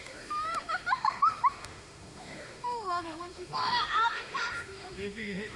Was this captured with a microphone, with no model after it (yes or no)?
no